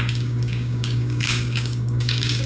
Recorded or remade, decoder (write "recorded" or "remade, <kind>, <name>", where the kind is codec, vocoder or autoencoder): remade, codec, DAC